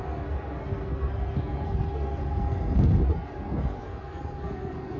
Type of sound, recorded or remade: remade